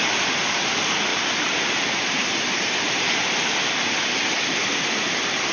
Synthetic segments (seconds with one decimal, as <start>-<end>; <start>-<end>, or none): 1.1-4.4